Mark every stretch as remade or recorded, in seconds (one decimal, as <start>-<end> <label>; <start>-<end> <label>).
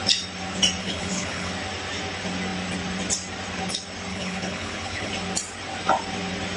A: 0.0-0.8 recorded; 0.8-1.5 remade; 1.5-4.1 recorded; 4.1-5.1 remade; 5.1-6.6 recorded